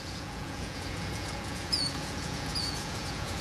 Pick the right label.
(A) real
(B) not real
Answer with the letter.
B